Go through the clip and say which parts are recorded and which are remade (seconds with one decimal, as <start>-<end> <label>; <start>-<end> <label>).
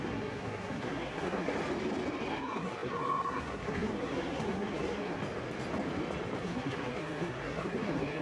0.0-1.5 remade; 1.5-2.3 recorded; 2.3-5.2 remade; 5.2-6.4 recorded; 6.4-8.2 remade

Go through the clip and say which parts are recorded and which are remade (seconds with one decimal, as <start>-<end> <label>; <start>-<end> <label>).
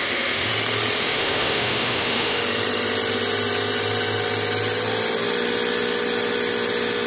0.0-0.5 remade; 0.5-1.0 recorded; 1.0-2.4 remade; 2.4-7.1 recorded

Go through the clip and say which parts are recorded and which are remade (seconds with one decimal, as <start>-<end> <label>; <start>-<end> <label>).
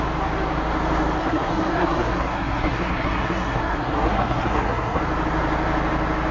0.0-1.2 recorded; 1.2-5.0 remade; 5.0-6.3 recorded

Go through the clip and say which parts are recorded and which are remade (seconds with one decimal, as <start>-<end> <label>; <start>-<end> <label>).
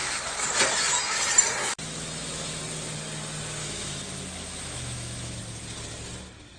0.0-0.5 remade; 0.5-1.6 recorded; 1.6-2.6 remade; 2.6-3.6 recorded; 3.6-5.4 remade; 5.4-6.6 recorded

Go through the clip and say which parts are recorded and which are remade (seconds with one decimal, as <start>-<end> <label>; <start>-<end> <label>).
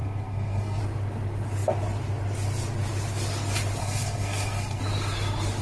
0.0-0.8 remade; 0.8-3.8 recorded; 3.8-4.8 remade; 4.8-5.6 recorded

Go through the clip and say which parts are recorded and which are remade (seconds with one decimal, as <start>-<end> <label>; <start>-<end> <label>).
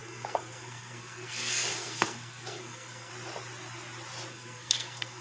0.0-3.1 remade; 3.1-4.3 recorded; 4.3-5.2 remade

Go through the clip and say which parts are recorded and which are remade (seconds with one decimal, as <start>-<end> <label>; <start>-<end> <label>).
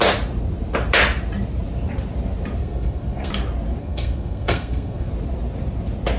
0.0-2.6 recorded; 2.6-3.3 remade; 3.3-3.8 recorded; 3.8-5.1 remade; 5.1-6.2 recorded